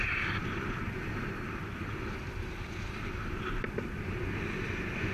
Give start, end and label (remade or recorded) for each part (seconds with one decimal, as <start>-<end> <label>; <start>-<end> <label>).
0.0-5.1 recorded